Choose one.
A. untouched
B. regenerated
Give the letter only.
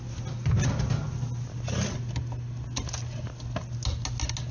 A